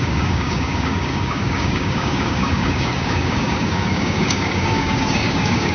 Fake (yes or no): yes